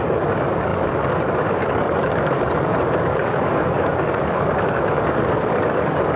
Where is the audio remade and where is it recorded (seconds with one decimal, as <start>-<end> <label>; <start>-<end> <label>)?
0.0-6.2 remade